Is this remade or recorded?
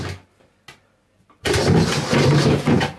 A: recorded